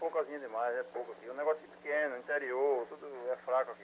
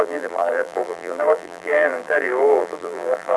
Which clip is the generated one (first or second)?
second